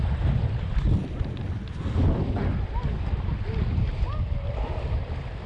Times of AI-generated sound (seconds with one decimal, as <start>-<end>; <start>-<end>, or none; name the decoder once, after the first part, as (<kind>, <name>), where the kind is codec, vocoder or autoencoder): none